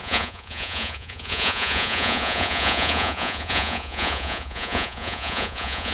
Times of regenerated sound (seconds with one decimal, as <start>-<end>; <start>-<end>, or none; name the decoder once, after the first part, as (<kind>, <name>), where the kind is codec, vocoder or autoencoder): 0.0-5.9 (vocoder, Vocos)